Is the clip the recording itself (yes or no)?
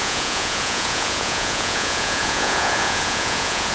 no